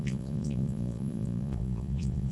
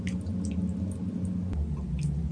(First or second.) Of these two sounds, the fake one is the first